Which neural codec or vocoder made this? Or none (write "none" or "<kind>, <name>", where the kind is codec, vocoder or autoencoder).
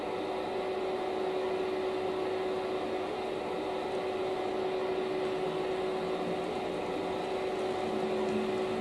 none